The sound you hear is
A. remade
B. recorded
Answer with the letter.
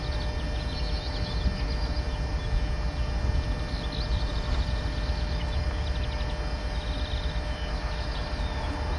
B